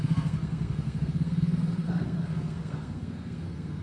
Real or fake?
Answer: fake